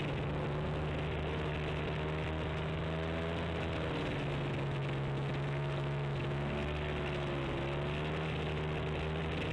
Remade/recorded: recorded